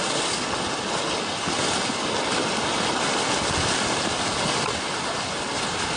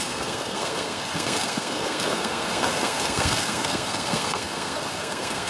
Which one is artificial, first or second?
second